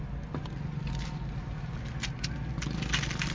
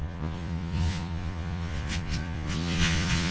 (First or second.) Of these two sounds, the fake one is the second